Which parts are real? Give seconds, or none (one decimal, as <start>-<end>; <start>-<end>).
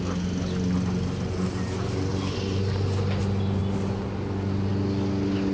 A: 0.0-5.5